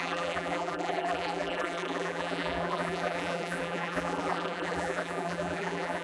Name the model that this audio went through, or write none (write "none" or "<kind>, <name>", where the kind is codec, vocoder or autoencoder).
vocoder, BigVGAN v2